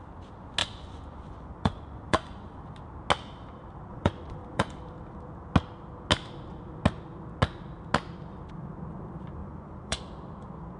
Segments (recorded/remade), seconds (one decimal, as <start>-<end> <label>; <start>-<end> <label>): 0.0-0.6 recorded; 0.6-2.6 remade; 2.6-3.9 recorded; 3.9-4.8 remade; 4.8-9.4 recorded; 9.4-10.0 remade; 10.0-10.8 recorded